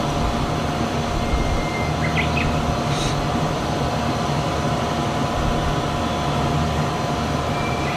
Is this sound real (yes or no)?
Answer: yes